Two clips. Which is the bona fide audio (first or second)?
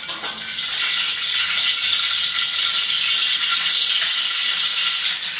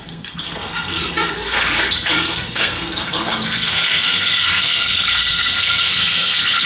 first